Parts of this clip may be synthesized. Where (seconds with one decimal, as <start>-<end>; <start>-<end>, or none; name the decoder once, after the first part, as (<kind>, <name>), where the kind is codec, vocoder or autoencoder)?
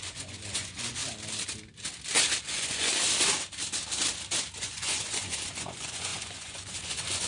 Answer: 0.0-1.0 (vocoder, Vocos); 2.4-2.9; 4.6-7.3